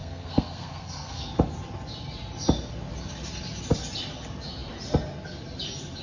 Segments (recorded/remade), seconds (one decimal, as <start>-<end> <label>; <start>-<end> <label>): 0.0-1.2 remade; 1.2-6.0 recorded